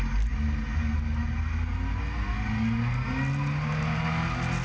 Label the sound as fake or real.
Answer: real